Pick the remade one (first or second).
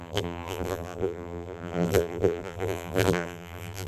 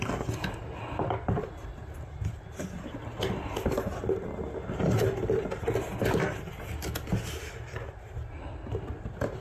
first